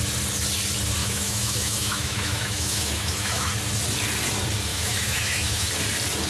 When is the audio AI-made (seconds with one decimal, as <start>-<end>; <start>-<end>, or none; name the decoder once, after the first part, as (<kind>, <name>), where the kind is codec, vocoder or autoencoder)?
1.0-3.5 (autoencoder, DAC-VAE); 4.7-5.7